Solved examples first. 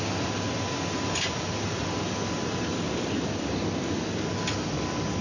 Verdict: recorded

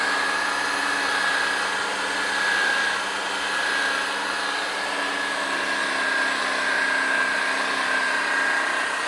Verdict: recorded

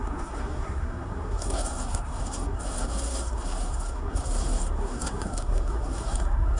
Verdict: remade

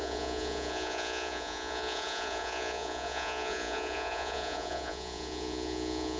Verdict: remade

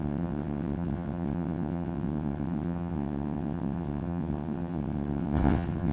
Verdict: remade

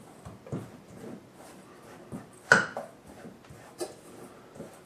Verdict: recorded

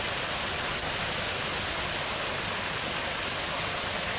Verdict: recorded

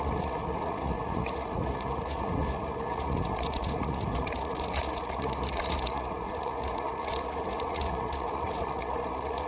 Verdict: remade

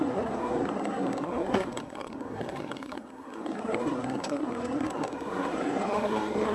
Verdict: remade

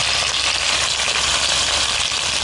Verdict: remade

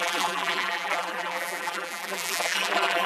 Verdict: remade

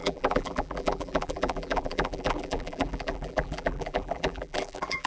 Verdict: remade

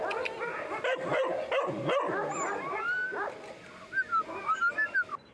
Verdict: recorded